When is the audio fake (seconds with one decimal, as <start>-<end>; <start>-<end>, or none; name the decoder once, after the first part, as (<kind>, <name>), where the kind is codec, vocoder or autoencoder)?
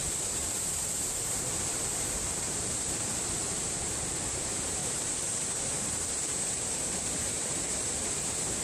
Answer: 0.0-8.6 (vocoder, BigVGAN v2)